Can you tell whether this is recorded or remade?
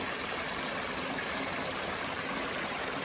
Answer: recorded